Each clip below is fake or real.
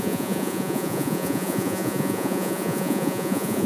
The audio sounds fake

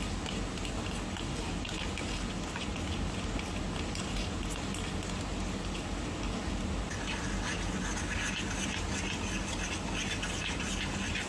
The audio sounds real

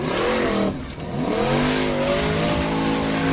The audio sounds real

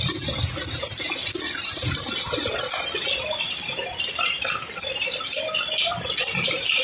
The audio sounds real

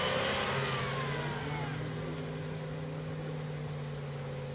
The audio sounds real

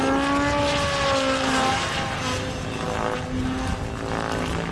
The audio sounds real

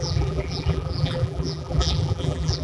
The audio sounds fake